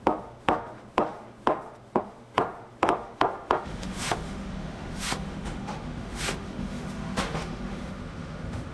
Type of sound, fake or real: fake